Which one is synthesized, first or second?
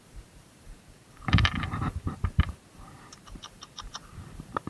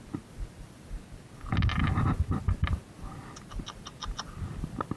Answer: first